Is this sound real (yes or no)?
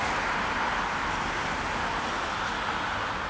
yes